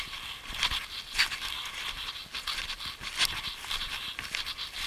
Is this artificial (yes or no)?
no